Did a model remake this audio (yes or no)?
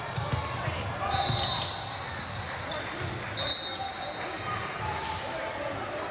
no